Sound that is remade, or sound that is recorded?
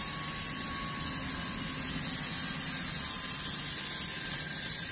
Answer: recorded